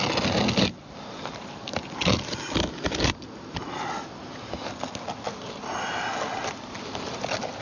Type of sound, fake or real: real